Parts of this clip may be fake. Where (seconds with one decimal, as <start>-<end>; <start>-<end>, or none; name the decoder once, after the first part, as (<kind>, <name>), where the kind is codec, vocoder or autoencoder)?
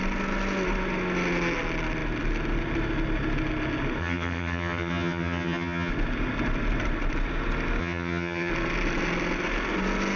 4.0-5.9 (vocoder, HiFi-GAN); 7.8-8.5